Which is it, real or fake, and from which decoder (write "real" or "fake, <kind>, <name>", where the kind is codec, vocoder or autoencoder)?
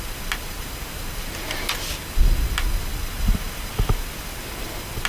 real